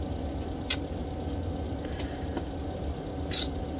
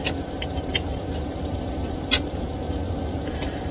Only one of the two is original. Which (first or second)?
first